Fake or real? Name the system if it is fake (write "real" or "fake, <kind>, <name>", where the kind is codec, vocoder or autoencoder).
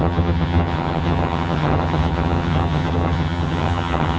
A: fake, vocoder, HiFi-GAN